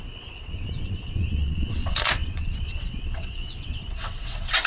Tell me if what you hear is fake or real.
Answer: fake